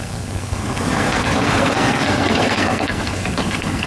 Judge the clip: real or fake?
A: fake